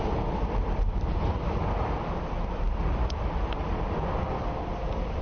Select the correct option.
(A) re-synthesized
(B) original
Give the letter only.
B